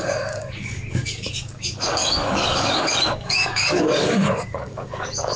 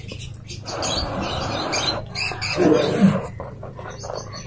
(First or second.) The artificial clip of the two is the first